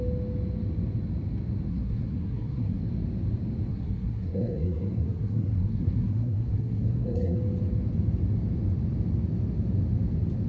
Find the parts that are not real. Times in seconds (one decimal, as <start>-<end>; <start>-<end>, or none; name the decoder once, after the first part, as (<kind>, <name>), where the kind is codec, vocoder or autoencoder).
1.7-2.8 (codec, SNAC); 3.7-7.4